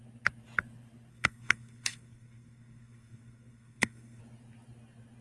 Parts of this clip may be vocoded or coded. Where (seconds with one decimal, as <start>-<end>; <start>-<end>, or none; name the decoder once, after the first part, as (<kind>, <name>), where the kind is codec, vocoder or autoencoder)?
1.1-4.2 (codec, SNAC)